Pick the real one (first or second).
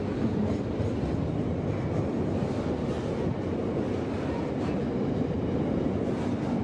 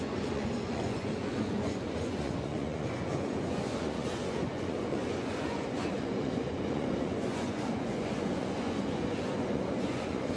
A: first